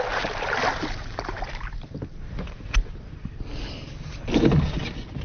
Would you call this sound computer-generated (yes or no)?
no